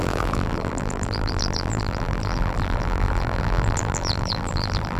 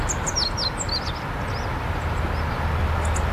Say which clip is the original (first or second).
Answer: second